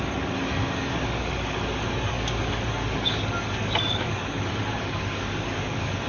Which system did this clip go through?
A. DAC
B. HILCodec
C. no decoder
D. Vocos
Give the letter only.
A